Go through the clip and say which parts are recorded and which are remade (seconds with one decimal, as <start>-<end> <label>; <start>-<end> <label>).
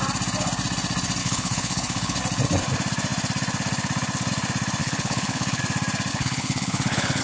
0.0-1.2 recorded; 1.2-2.2 remade; 2.2-4.8 recorded; 4.8-5.6 remade; 5.6-6.1 recorded; 6.1-7.2 remade